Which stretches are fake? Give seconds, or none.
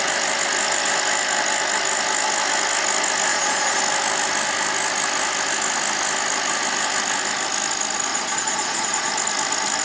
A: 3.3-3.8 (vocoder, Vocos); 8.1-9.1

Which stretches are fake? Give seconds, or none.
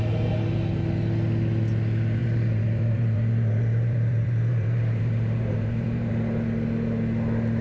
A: 2.2-6.1 (vocoder, BigVGAN v2)